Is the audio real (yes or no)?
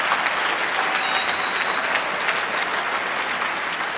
yes